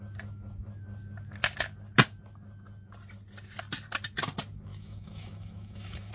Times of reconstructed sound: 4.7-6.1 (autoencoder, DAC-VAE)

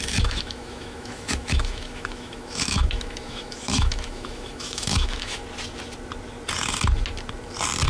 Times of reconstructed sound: 0.0-5.4 (autoencoder, DAC-VAE)